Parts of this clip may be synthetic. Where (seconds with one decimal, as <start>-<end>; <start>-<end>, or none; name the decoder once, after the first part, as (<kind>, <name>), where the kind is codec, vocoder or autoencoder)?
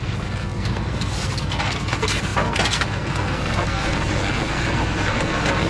0.0-5.7 (codec, SNAC)